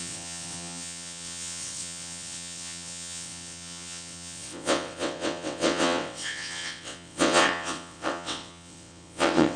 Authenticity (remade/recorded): remade